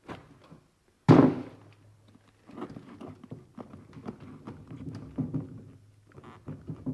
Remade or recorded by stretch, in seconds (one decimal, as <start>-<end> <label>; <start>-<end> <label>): 0.0-6.9 recorded